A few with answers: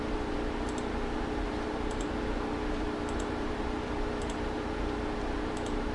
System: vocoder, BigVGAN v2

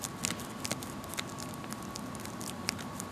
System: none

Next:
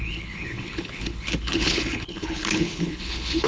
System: codec, HILCodec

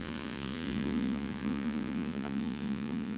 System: vocoder, Vocos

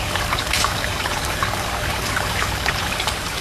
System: codec, DAC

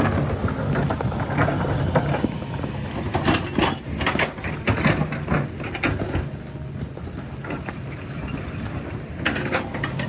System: none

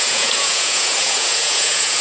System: vocoder, Vocos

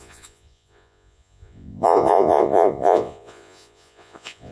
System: vocoder, Vocos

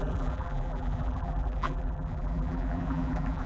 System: vocoder, BigVGAN v2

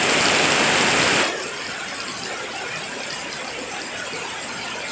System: none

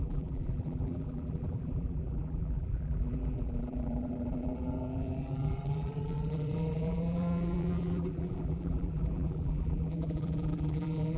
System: vocoder, BigVGAN v2